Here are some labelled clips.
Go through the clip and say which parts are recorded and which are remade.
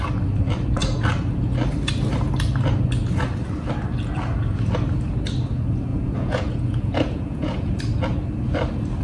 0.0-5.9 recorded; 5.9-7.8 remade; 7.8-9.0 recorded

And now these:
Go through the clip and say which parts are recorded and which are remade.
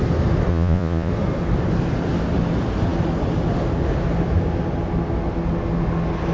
0.0-0.5 recorded; 0.5-1.1 remade; 1.1-6.3 recorded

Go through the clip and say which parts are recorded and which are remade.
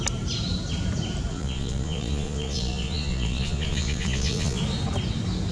0.0-1.3 recorded; 1.3-4.6 remade; 4.6-5.5 recorded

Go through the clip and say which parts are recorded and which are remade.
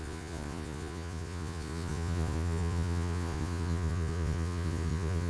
0.0-5.3 remade